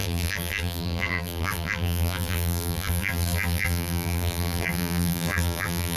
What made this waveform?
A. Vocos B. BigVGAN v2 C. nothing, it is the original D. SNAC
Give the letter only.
B